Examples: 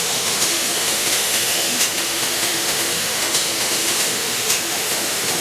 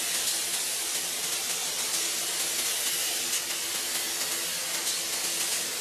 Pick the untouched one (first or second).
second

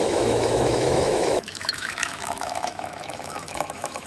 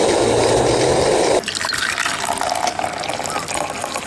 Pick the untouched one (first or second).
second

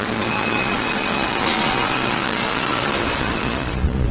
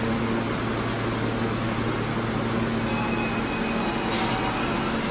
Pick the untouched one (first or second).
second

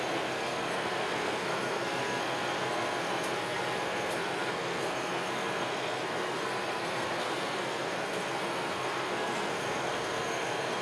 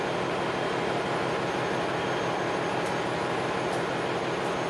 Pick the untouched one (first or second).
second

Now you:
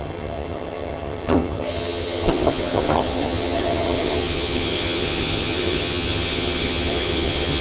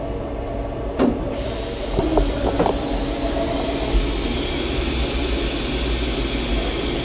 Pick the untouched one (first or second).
second